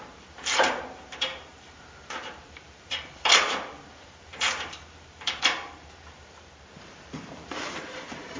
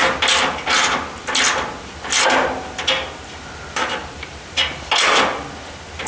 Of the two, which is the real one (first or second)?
second